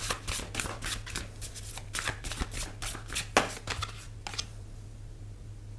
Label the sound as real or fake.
real